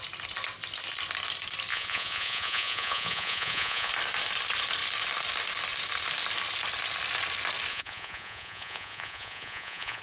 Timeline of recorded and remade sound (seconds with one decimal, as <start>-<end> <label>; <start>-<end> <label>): 0.0-1.7 recorded; 1.7-3.9 remade; 3.9-7.7 recorded; 7.7-10.0 remade